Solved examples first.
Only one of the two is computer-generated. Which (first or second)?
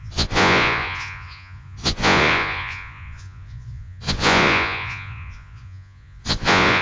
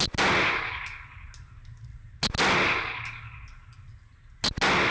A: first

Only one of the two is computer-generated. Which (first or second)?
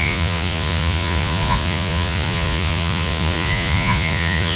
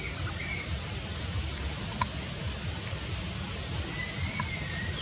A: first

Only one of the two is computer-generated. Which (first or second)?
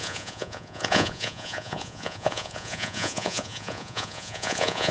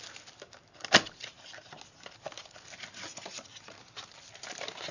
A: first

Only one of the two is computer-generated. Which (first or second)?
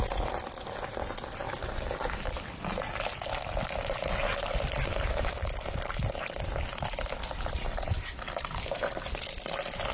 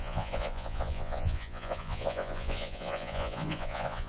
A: second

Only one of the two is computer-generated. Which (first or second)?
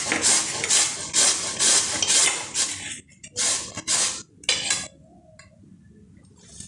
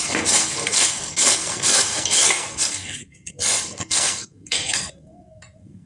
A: second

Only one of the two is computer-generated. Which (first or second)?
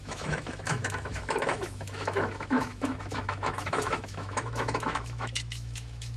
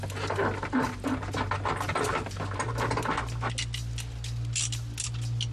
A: first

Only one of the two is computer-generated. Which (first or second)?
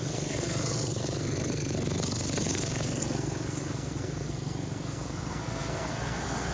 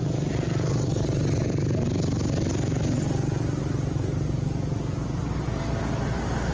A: first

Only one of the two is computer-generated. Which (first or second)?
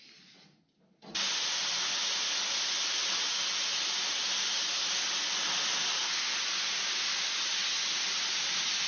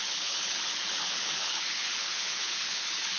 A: second